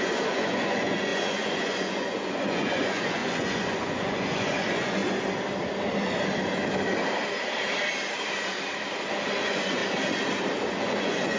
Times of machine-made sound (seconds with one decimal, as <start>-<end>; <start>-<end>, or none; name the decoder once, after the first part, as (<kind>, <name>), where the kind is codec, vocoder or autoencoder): 0.0-5.0 (vocoder, Vocos); 9.4-9.8; 10.8-11.4